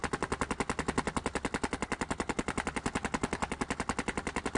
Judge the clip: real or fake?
real